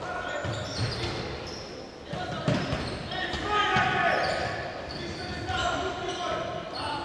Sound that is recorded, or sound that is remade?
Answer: recorded